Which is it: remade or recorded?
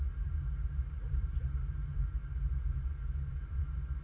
remade